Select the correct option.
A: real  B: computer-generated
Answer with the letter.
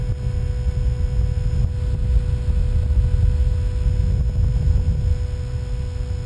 A